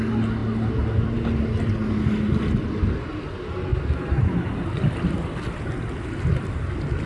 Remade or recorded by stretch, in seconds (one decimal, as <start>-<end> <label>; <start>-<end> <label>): 0.0-7.1 recorded